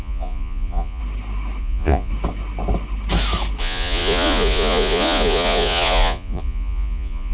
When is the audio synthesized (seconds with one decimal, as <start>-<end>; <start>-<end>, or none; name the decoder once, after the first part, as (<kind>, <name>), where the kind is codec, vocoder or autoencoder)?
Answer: 0.0-1.0 (vocoder, Vocos); 1.6-2.1; 3.6-7.3